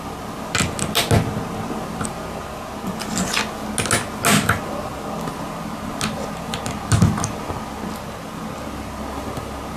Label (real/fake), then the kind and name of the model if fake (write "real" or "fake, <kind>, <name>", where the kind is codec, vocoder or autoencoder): real